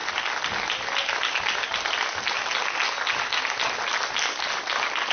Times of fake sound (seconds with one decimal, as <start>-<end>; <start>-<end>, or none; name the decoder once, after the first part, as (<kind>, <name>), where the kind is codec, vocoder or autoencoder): none